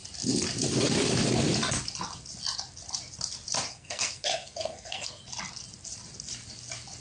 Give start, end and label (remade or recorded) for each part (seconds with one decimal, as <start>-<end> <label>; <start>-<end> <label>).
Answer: 0.0-3.7 recorded; 3.7-5.2 remade; 5.2-7.0 recorded

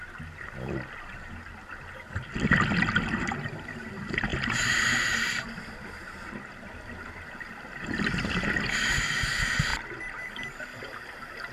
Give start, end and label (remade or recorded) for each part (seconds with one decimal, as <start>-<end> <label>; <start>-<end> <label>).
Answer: 0.0-11.5 recorded

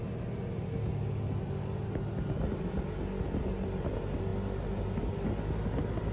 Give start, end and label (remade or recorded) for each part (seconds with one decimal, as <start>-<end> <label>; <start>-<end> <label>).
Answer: 0.0-6.1 recorded

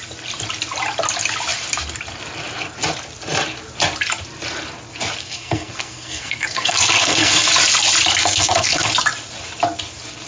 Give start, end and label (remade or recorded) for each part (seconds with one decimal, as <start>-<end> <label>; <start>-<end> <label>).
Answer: 0.0-5.2 recorded; 5.2-7.5 remade; 7.5-8.2 recorded; 8.2-8.9 remade; 8.9-10.3 recorded

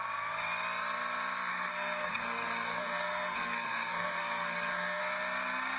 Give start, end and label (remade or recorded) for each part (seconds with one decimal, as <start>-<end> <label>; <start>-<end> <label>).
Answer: 0.0-1.5 recorded; 1.5-5.0 remade; 5.0-5.8 recorded

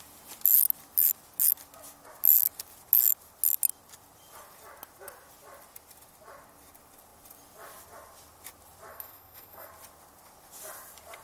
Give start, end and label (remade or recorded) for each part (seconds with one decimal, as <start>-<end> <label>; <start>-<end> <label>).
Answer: 0.0-8.9 recorded; 8.9-9.7 remade; 9.7-11.2 recorded

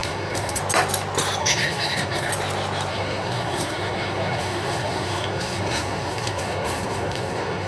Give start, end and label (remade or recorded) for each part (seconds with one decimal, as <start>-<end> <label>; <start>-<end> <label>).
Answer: 0.0-0.6 remade; 0.6-1.4 recorded; 1.4-2.3 remade; 2.3-2.9 recorded; 2.9-7.7 remade

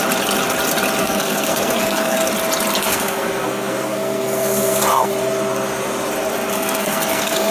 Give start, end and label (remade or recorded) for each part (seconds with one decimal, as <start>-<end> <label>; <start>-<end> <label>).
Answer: 0.0-1.0 recorded; 1.0-2.3 remade; 2.3-2.8 recorded; 2.8-5.1 remade; 5.1-6.5 recorded; 6.5-7.5 remade